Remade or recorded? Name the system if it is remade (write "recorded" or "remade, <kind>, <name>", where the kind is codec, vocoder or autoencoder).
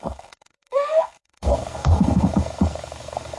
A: remade, codec, SNAC